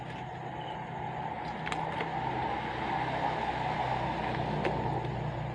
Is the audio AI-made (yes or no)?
no